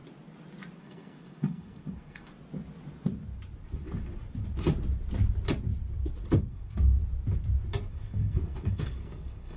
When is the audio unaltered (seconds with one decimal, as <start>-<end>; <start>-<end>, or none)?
0.0-0.8; 2.3-6.5; 7.0-7.9